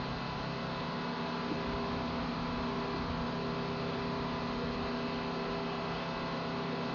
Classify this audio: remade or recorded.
recorded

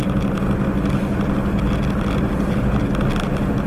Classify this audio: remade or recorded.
recorded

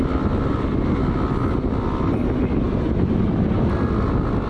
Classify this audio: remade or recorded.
recorded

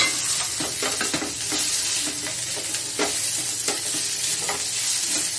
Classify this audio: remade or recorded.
recorded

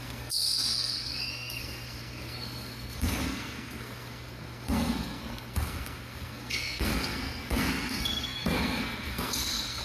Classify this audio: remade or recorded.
remade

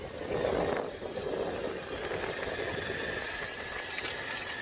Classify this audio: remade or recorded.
recorded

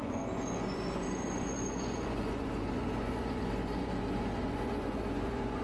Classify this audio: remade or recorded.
remade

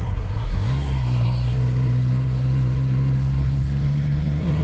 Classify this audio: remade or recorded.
remade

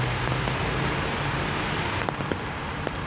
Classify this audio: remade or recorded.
recorded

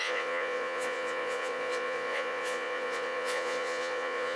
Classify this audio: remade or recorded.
remade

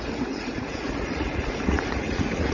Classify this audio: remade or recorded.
remade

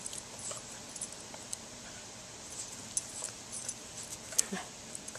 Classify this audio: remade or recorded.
recorded